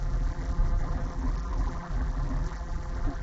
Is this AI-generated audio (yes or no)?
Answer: yes